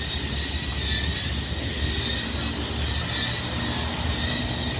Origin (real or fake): real